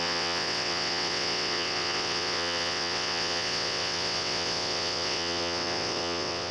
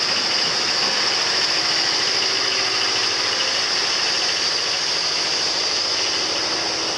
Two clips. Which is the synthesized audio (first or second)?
first